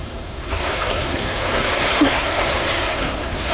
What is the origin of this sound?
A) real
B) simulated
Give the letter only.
B